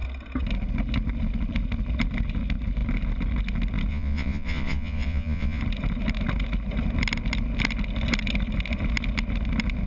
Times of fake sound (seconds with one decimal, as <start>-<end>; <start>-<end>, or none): 3.9-5.6